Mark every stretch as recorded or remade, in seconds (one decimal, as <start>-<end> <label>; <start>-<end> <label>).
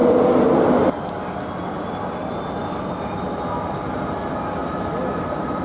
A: 0.0-4.6 recorded; 4.6-5.6 remade